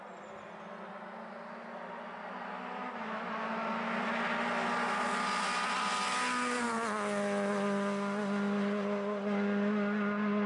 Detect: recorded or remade recorded